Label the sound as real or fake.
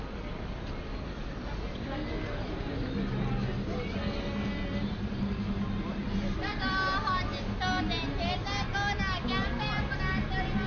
real